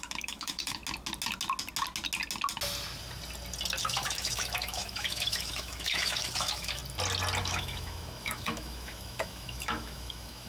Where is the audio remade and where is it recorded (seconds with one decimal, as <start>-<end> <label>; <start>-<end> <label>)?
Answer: 0.0-0.8 remade; 0.8-3.8 recorded; 3.8-6.8 remade; 6.8-7.4 recorded; 7.4-10.5 remade